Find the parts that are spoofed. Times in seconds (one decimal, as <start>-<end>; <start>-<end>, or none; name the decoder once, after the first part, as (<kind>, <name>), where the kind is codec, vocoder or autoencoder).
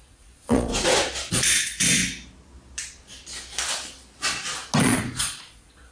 0.0-0.7 (vocoder, Vocos); 1.3-2.0; 4.8-5.9